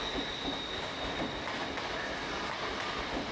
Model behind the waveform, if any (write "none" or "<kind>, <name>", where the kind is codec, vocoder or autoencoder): none